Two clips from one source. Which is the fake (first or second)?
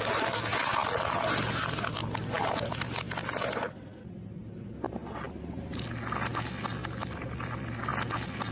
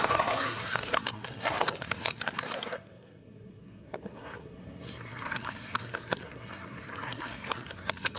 second